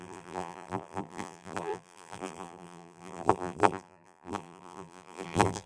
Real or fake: fake